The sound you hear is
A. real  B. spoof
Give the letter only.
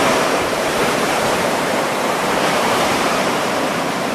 B